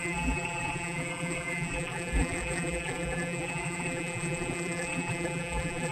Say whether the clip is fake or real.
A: fake